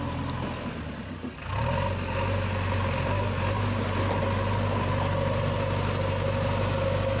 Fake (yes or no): no